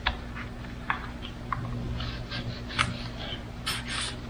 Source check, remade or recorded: recorded